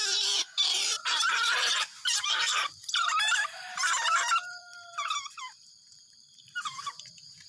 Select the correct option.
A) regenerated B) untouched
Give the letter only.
A